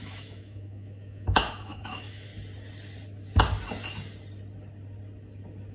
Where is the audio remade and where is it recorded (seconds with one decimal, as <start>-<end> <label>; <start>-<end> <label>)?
0.0-2.3 remade; 2.3-5.7 recorded